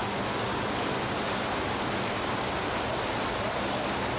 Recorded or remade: recorded